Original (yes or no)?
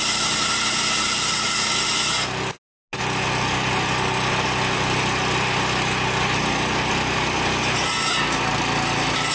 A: yes